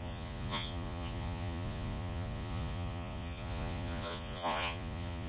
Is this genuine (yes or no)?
no